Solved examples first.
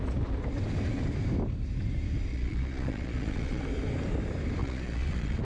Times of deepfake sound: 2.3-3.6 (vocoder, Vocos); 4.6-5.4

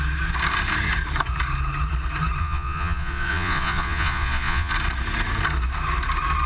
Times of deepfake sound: 2.4-4.7 (vocoder, Vocos)

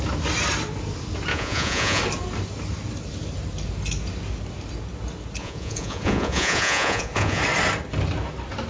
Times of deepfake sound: 1.3-2.0 (vocoder, Vocos); 5.4-7.4

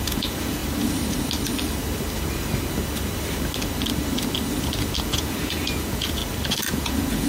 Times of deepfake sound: 0.0-0.6 (vocoder, Vocos); 5.0-6.2; 6.7-7.3

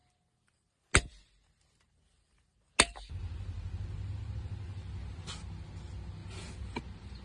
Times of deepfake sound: 6.2-6.8 (vocoder, Vocos)